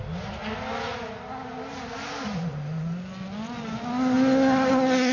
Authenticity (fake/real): real